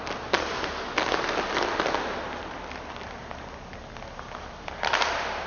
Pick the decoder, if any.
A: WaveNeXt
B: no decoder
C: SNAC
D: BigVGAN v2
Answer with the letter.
B